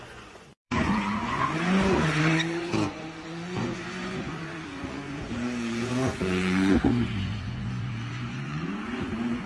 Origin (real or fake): fake